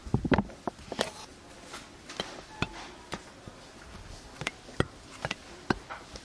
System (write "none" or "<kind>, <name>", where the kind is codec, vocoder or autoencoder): none